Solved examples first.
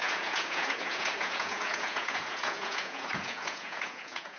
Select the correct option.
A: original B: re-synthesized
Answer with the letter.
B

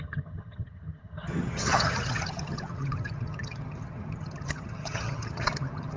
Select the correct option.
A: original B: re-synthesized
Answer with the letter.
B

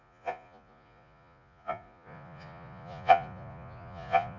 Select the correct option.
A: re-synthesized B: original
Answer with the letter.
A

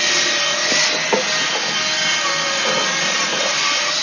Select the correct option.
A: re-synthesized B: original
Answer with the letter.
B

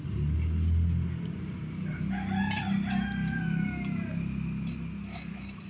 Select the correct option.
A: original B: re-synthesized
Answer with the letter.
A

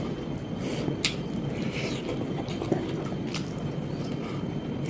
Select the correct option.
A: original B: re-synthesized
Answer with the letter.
A